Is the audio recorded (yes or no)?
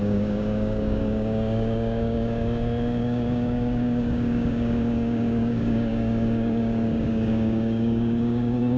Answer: no